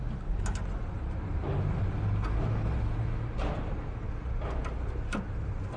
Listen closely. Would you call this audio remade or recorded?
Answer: recorded